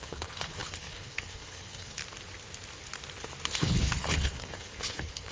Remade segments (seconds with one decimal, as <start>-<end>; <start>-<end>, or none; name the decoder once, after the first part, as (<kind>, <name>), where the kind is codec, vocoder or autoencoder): 0.0-2.0 (codec, HILCodec); 3.6-5.3